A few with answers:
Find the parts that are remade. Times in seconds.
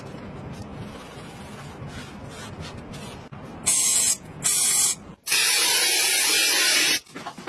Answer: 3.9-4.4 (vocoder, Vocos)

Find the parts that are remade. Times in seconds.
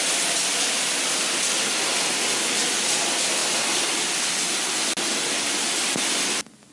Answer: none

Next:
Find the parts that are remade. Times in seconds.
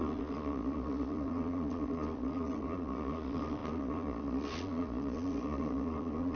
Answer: 0.0-6.4 (vocoder, Vocos)